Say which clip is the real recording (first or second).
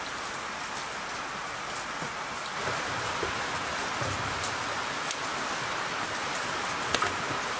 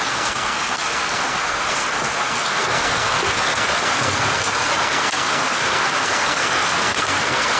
first